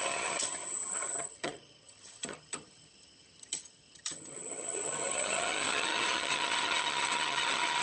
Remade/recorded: remade